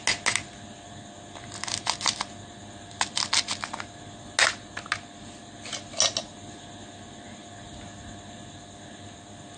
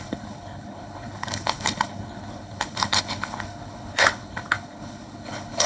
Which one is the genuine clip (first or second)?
first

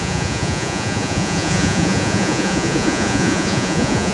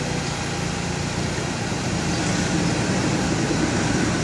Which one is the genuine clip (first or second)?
second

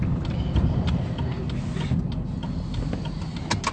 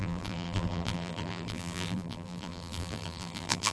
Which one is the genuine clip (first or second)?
first